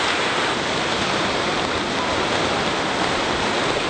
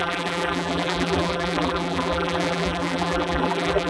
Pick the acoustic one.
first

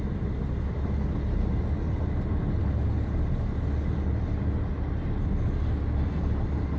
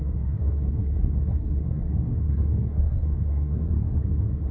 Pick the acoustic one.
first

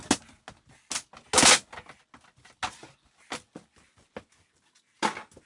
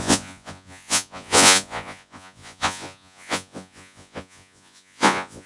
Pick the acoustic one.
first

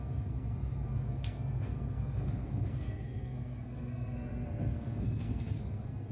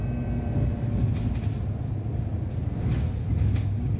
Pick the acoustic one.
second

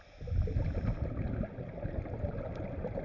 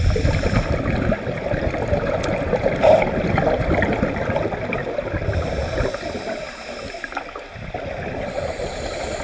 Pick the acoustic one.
first